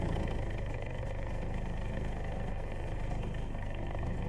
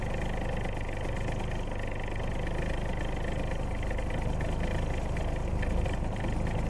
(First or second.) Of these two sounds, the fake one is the first